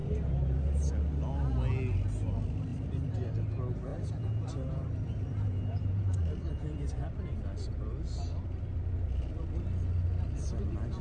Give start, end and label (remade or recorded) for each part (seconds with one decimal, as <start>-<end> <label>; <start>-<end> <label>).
0.0-0.9 remade; 0.9-2.7 recorded; 2.7-3.3 remade; 3.3-3.9 recorded; 3.9-6.9 remade; 6.9-11.0 recorded